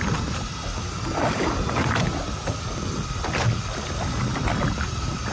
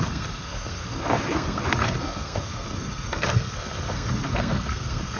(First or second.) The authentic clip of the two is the first